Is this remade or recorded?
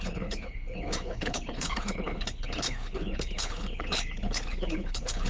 remade